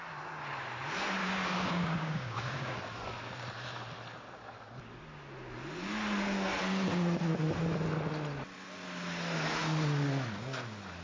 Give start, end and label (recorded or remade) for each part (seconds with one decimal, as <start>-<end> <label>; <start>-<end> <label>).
0.0-1.2 recorded; 1.2-2.8 remade; 2.8-11.0 recorded